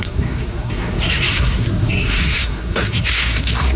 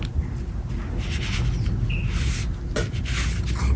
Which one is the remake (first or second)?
first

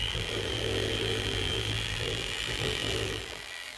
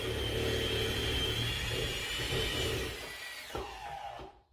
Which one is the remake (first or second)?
first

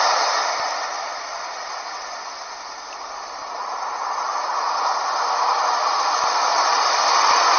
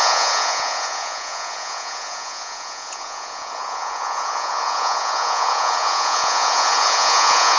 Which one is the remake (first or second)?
second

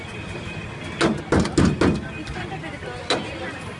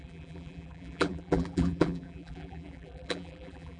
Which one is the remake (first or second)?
second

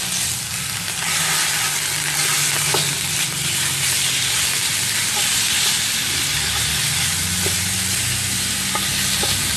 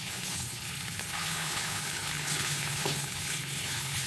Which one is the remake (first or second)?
second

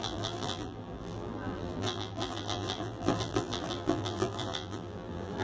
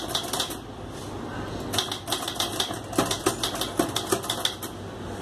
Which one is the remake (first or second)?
first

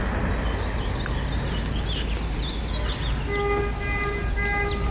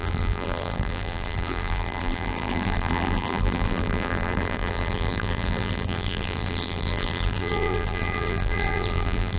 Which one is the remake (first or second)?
second